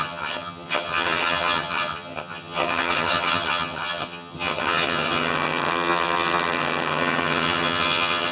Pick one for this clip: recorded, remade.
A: remade